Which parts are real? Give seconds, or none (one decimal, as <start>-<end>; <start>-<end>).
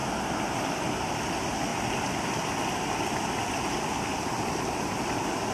0.0-1.7; 3.0-4.1; 5.0-5.5